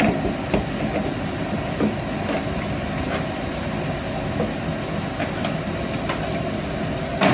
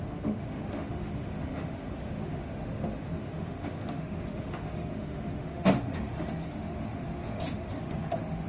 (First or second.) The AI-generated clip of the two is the second